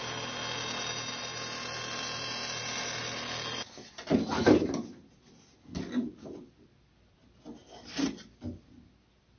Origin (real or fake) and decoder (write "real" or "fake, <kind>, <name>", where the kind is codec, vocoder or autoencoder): real